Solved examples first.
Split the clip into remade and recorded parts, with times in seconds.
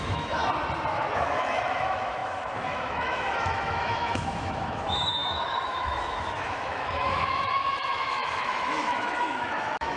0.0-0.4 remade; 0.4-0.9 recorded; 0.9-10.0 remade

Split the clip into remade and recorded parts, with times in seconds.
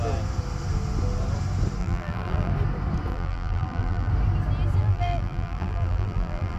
0.0-1.8 recorded; 1.8-2.5 remade; 2.5-3.1 recorded; 3.1-4.1 remade; 4.1-4.8 recorded; 4.8-6.6 remade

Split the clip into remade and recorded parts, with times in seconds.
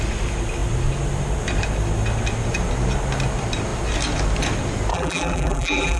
0.0-4.9 recorded; 4.9-6.0 remade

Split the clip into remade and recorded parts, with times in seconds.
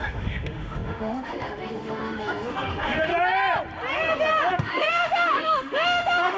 0.0-3.1 remade; 3.1-4.5 recorded; 4.5-6.4 remade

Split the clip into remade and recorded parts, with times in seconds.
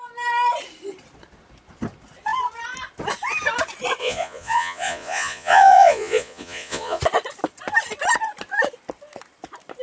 0.0-4.0 recorded; 4.0-7.0 remade; 7.0-9.8 recorded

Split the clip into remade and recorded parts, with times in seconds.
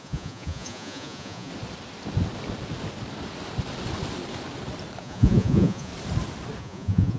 0.0-1.5 remade; 1.5-5.0 recorded; 5.0-5.9 remade; 5.9-6.6 recorded; 6.6-7.2 remade